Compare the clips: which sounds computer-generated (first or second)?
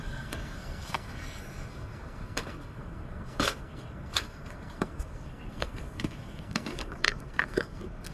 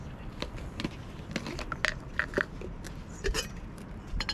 first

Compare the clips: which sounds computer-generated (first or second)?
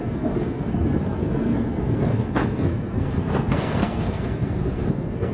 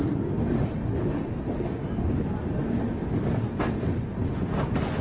first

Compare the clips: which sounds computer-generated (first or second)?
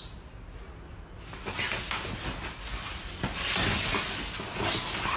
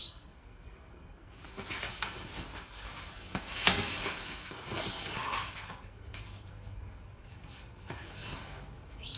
second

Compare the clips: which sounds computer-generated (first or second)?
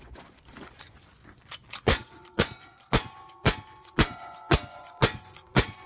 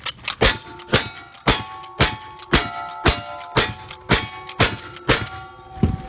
first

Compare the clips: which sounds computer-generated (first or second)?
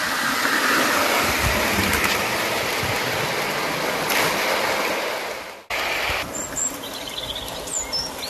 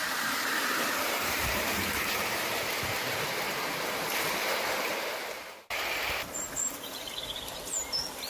second